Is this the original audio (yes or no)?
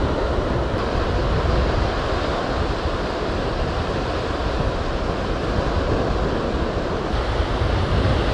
yes